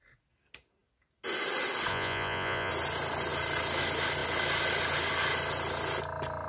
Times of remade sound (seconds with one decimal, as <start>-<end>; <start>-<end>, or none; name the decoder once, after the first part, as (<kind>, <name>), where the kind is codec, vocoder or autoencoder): 1.9-2.7 (vocoder, Vocos)